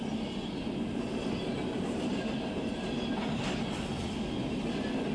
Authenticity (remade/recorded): recorded